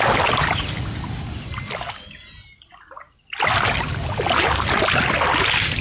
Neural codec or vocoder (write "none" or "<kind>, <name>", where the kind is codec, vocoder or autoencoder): none